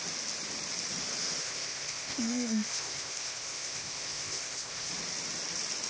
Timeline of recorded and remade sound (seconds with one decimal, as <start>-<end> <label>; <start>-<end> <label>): 0.0-1.4 recorded; 1.4-4.9 remade; 4.9-5.9 recorded